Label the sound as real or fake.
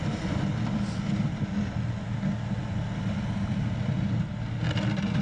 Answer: real